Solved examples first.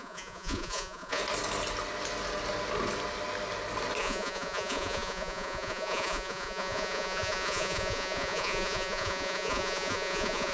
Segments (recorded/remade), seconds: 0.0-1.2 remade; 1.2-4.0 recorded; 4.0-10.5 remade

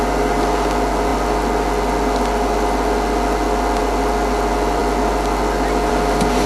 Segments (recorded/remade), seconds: 0.0-6.5 recorded

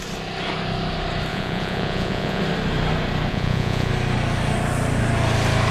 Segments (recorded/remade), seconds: 0.0-1.3 recorded; 1.3-2.4 remade; 2.4-3.3 recorded; 3.3-3.9 remade; 3.9-5.7 recorded

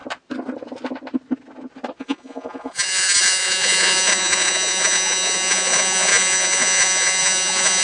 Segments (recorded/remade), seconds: 0.0-2.0 recorded; 2.0-7.8 remade

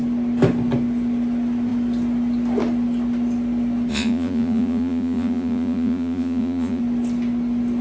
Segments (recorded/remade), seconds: 0.0-3.9 recorded; 3.9-6.8 remade; 6.8-7.8 recorded

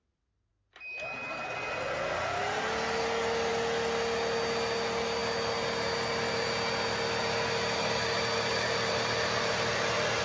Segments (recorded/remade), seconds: 0.0-10.2 recorded

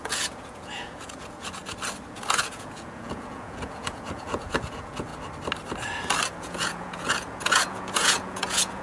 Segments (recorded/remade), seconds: 0.0-1.6 remade; 1.6-2.1 recorded; 2.1-5.1 remade; 5.1-6.3 recorded; 6.3-8.8 remade